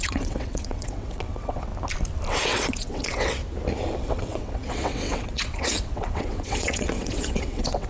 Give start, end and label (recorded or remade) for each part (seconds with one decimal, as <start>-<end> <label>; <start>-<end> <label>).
0.0-1.7 remade; 1.7-2.3 recorded; 2.3-3.4 remade; 3.4-4.0 recorded; 4.0-7.9 remade